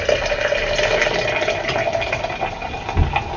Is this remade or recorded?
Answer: recorded